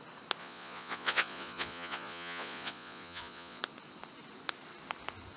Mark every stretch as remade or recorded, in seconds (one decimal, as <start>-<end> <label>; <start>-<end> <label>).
0.0-0.4 recorded; 0.4-3.6 remade; 3.6-5.4 recorded